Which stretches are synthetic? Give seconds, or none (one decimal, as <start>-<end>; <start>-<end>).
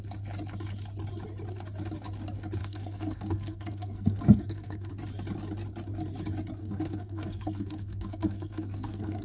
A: 2.6-4.9; 6.6-9.2